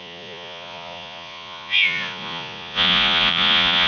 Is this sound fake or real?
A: fake